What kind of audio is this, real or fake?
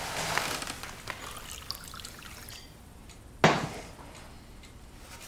real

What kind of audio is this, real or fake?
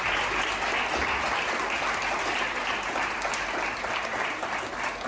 real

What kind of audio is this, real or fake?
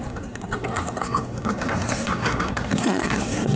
fake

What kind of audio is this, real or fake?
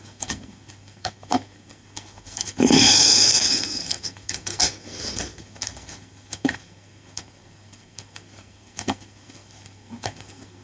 fake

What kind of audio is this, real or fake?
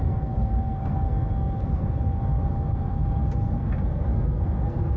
fake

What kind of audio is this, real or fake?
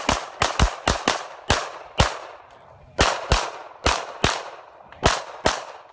real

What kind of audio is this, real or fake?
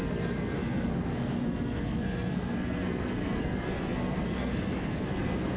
fake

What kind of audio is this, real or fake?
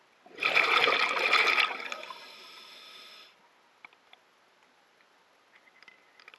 real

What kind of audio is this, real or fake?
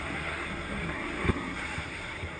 fake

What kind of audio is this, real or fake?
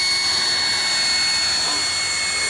real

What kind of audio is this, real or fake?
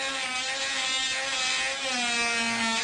real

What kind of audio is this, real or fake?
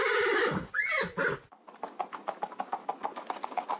real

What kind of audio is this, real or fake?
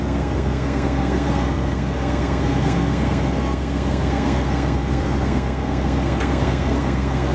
fake